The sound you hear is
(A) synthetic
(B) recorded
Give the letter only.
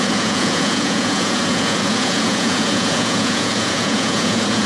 A